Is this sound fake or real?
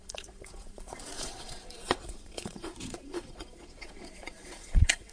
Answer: fake